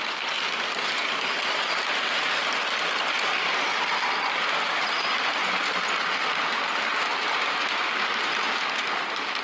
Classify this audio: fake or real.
real